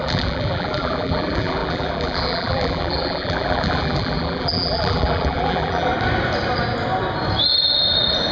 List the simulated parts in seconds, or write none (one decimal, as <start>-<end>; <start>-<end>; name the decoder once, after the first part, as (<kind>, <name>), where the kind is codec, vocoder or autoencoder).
0.0-5.9 (vocoder, BigVGAN v2)